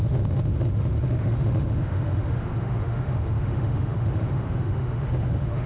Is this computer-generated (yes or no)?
yes